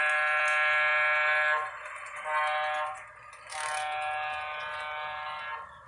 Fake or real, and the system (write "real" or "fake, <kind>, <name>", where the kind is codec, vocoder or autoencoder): real